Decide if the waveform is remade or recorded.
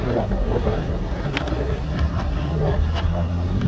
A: remade